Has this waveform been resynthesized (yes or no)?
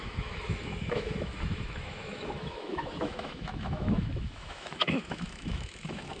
yes